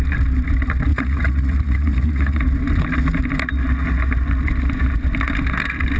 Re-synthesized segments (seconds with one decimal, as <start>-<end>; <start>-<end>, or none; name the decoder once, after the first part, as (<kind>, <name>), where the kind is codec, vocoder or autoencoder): 0.9-2.4 (vocoder, Vocos)